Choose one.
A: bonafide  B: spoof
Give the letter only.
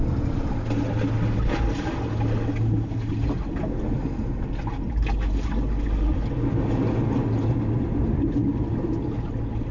A